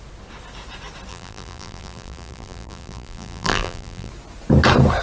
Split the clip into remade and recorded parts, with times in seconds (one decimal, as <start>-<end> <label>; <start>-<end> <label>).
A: 0.0-1.1 recorded; 1.1-4.1 remade; 4.1-5.0 recorded